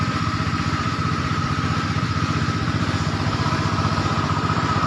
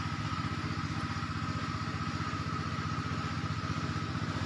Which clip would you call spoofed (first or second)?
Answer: first